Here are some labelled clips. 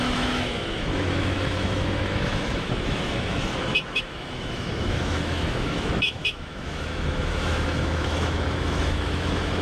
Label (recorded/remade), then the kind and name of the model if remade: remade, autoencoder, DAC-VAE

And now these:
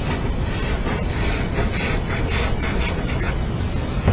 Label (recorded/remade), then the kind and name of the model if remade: remade, vocoder, BigVGAN v2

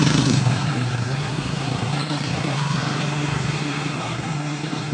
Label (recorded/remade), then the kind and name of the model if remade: remade, codec, SNAC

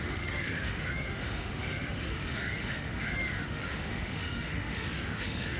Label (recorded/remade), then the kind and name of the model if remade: remade, autoencoder, DAC-VAE